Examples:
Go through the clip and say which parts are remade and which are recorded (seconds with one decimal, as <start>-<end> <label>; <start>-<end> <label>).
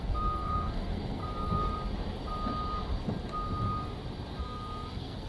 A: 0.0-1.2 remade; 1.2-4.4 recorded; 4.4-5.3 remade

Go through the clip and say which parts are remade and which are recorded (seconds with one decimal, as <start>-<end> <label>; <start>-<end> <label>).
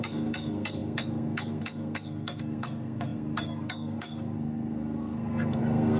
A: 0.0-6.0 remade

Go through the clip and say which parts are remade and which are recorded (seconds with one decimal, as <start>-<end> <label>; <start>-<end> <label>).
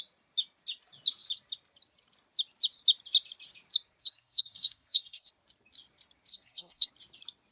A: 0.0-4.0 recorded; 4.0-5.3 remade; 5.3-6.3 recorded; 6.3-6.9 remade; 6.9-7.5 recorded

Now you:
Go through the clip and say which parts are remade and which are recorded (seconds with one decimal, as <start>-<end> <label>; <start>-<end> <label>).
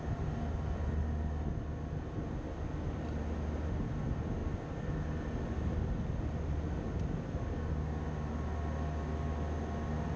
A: 0.0-10.2 recorded